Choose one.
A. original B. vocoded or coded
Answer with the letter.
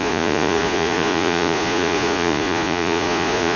B